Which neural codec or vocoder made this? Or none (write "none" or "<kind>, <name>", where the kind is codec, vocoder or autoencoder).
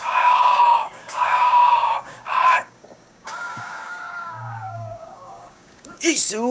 codec, DAC